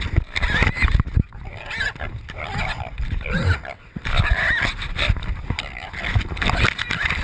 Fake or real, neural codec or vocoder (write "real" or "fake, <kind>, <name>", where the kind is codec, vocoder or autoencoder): real